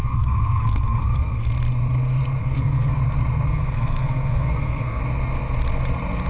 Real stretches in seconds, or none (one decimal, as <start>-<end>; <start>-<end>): 1.5-2.4; 3.0-3.5; 5.0-6.3